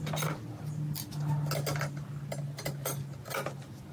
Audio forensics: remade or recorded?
recorded